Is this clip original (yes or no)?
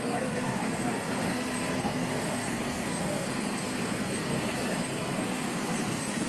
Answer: no